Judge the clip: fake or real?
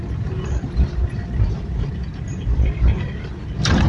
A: real